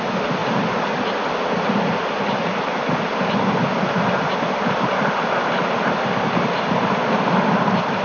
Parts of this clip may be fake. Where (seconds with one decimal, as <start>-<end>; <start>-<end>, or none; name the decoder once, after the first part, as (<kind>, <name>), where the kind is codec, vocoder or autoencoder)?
none